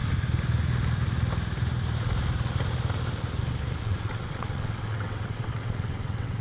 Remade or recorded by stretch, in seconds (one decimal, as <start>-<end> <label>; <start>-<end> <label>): 0.0-3.8 recorded; 3.8-6.4 remade